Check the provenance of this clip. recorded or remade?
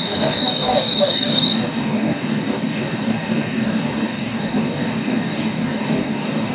remade